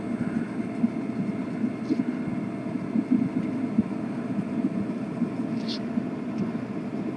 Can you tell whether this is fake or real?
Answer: real